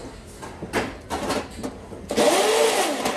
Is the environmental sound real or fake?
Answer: real